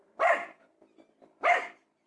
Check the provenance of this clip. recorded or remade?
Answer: recorded